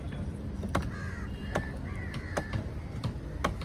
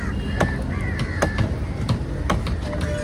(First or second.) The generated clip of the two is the first